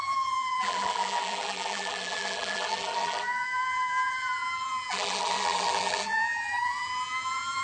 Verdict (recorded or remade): remade